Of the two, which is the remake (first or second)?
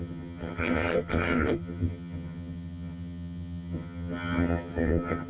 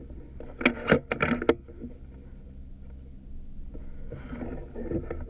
first